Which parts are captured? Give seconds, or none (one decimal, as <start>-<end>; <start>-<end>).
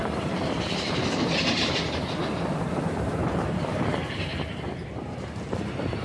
1.8-2.5